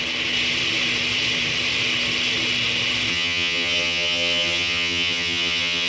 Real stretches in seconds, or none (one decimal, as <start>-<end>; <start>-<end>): 0.0-3.1